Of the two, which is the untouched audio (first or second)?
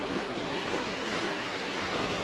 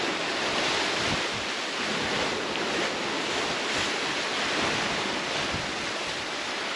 second